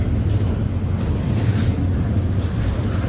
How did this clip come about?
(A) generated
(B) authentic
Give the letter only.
B